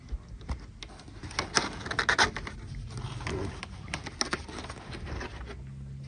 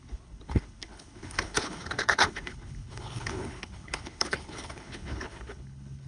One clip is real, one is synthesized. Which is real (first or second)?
first